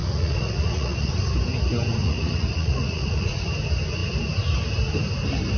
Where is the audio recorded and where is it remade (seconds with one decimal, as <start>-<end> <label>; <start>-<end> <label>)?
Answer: 0.0-1.1 remade; 1.1-2.0 recorded; 2.0-3.5 remade; 3.5-5.6 recorded